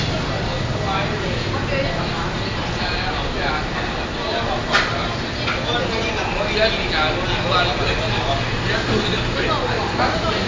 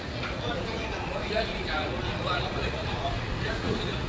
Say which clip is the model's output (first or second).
second